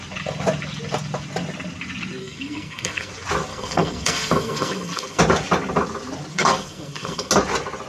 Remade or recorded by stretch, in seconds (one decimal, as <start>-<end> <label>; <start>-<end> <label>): 0.0-2.2 recorded; 2.2-3.1 remade; 3.1-3.5 recorded; 3.5-5.2 remade; 5.2-6.3 recorded; 6.3-7.3 remade; 7.3-7.9 recorded